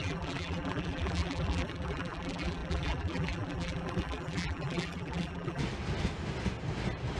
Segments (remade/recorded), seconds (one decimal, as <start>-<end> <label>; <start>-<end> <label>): 0.0-5.6 remade; 5.6-7.2 recorded